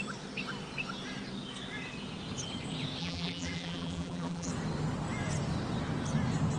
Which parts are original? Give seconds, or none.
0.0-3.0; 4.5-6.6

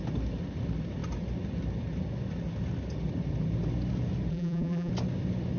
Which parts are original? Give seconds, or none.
0.0-4.3; 4.9-5.6